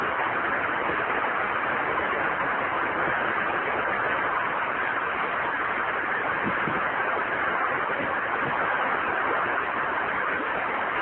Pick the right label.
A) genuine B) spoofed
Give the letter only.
A